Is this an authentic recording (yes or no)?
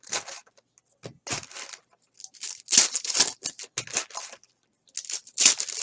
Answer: yes